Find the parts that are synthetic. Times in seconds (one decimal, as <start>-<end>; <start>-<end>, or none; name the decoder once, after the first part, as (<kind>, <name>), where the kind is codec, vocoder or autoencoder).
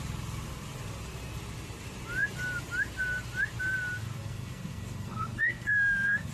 4.2-6.3 (codec, SNAC)